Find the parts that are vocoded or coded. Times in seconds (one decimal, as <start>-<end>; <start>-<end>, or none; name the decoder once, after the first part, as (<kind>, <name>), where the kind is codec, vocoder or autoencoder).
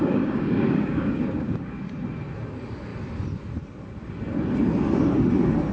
0.0-1.8 (codec, DAC)